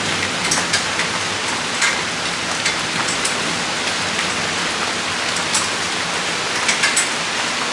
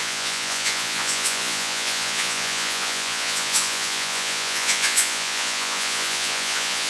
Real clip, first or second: first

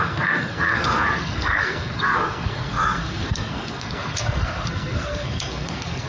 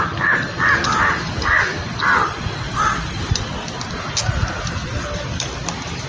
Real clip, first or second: second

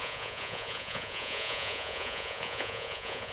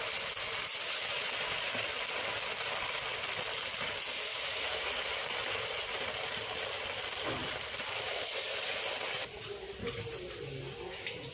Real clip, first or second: second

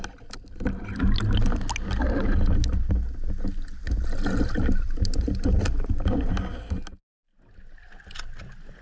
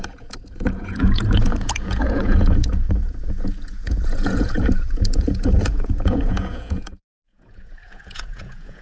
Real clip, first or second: first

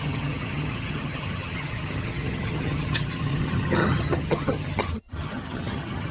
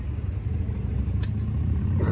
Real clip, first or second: second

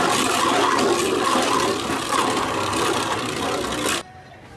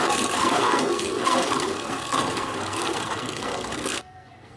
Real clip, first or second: first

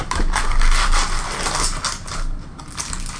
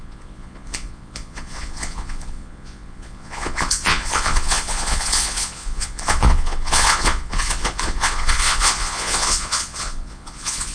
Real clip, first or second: first